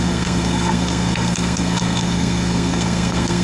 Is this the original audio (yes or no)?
no